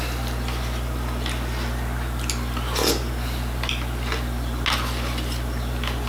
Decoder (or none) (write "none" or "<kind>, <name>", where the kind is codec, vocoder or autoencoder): none